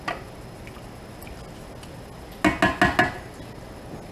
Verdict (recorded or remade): recorded